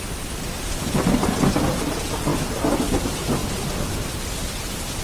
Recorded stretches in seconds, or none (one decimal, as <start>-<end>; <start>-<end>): 0.0-4.4